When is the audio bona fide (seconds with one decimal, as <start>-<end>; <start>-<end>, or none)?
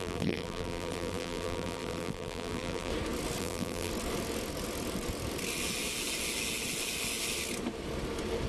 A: 2.9-3.4; 3.9-8.5